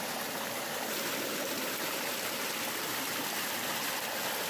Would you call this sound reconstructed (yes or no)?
no